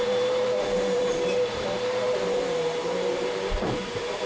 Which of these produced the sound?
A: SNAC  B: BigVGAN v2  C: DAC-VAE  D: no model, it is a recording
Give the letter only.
B